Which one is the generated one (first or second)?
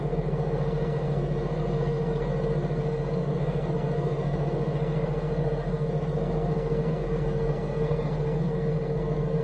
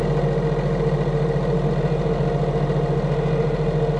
first